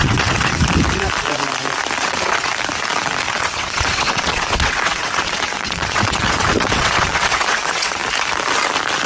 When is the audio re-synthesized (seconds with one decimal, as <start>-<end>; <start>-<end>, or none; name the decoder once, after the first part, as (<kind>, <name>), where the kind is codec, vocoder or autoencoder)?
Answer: 0.0-0.6 (vocoder, WaveNeXt); 2.0-2.5; 3.3-8.0

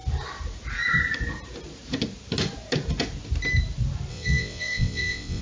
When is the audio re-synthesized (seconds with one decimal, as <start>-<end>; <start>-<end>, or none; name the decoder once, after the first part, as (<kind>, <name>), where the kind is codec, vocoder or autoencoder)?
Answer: 4.1-5.4 (vocoder, WaveNeXt)